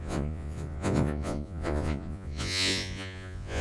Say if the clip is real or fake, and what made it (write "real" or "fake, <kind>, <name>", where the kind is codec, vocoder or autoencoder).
fake, vocoder, Vocos